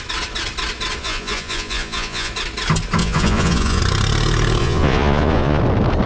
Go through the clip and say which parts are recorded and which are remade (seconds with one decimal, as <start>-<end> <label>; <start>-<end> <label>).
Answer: 0.0-1.0 recorded; 1.0-2.3 remade; 2.3-3.0 recorded; 3.0-3.8 remade; 3.8-4.6 recorded; 4.6-5.6 remade; 5.6-6.1 recorded